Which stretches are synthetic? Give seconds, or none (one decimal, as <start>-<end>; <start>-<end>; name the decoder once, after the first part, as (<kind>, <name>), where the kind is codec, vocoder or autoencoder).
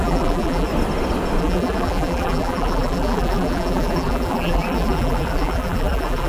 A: 0.0-0.7 (vocoder, BigVGAN v2); 1.4-6.3